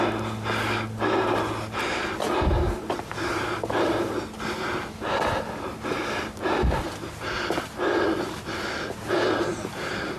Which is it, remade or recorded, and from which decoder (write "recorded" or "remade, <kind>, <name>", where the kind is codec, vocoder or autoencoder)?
recorded